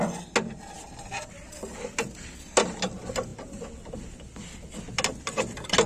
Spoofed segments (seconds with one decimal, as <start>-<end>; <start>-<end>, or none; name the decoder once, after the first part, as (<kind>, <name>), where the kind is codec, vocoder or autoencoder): none